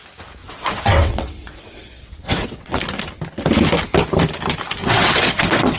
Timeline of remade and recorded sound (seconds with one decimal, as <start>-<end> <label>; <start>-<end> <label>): 0.0-0.4 recorded; 0.4-2.8 remade; 2.8-4.8 recorded; 4.8-5.8 remade